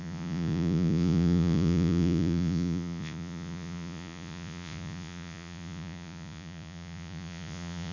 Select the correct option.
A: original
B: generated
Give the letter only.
B